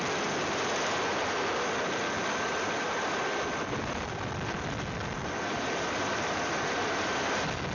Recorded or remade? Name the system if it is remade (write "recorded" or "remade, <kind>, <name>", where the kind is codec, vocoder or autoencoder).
recorded